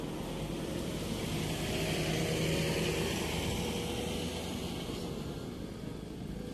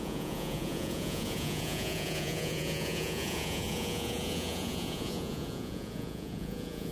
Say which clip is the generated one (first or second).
second